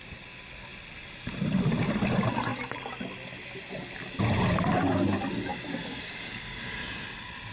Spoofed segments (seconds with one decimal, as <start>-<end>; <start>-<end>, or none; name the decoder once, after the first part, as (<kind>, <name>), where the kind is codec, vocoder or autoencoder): 5.5-6.7 (codec, DAC)